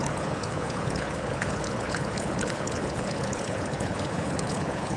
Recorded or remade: remade